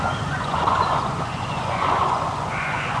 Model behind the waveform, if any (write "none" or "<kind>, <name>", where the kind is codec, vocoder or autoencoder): vocoder, Vocos